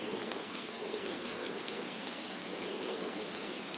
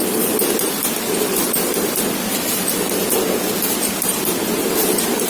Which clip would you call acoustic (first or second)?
second